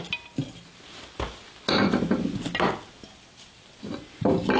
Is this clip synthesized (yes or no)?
no